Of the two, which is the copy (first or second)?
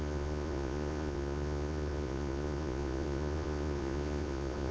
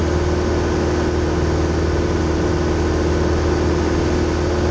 first